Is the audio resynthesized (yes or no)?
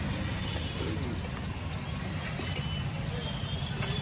no